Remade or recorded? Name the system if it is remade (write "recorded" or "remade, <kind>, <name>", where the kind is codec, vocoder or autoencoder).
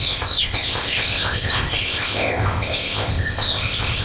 remade, codec, ZipCodec